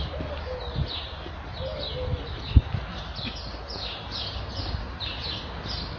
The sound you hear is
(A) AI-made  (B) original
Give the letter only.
B